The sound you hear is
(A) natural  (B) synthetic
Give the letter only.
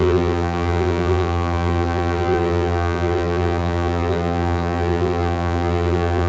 B